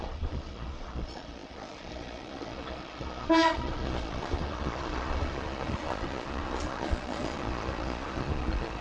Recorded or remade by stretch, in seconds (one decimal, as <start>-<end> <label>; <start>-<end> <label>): 0.0-8.8 remade